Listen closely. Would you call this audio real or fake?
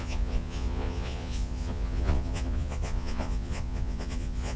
fake